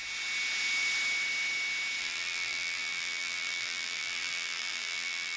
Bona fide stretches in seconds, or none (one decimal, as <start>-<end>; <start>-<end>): 0.0-2.0